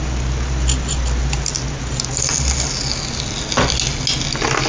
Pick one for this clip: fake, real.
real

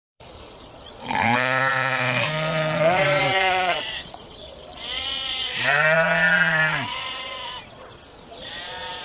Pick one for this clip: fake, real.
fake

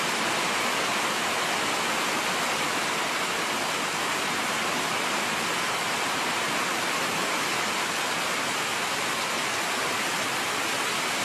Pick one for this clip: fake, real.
real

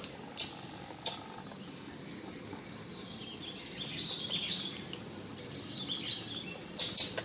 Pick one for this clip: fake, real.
real